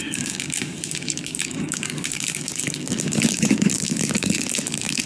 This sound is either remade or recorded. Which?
remade